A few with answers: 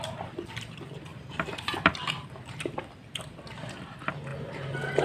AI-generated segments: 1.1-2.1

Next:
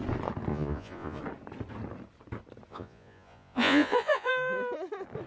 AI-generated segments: 0.5-1.2; 2.7-4.3